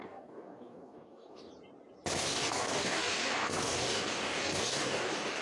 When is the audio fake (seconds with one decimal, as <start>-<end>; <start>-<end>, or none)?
0.0-1.5; 2.2-5.4